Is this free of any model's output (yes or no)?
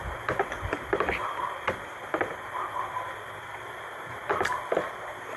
no